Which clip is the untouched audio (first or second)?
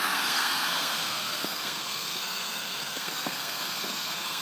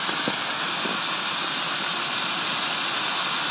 second